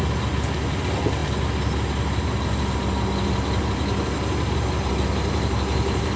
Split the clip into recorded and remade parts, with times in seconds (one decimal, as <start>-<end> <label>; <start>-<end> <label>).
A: 0.0-6.2 recorded